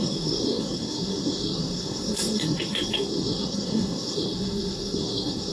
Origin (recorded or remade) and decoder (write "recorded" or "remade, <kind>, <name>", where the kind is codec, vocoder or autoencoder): remade, codec, SNAC